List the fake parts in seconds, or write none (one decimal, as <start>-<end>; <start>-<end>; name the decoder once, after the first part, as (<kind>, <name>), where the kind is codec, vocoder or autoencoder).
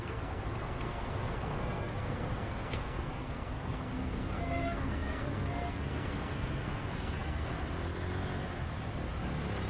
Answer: 0.0-7.5 (codec, SNAC)